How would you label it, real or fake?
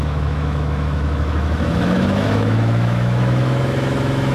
fake